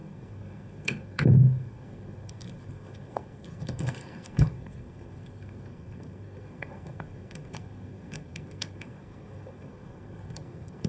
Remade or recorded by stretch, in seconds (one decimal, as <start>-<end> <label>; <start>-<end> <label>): 0.0-10.9 remade